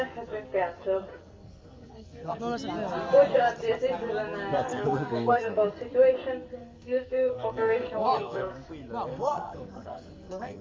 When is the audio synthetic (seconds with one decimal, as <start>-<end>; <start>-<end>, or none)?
1.1-2.4; 4.7-5.7; 6.6-8.7; 9.1-10.6